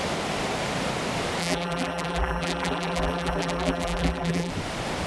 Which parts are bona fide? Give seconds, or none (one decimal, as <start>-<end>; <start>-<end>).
0.0-1.4; 4.5-5.1